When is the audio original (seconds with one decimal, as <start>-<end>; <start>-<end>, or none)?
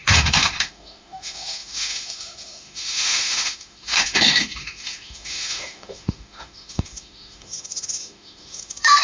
none